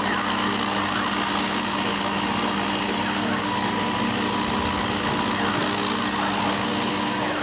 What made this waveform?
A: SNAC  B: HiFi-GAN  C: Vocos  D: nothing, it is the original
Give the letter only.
D